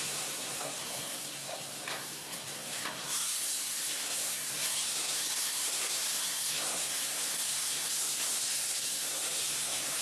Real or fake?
fake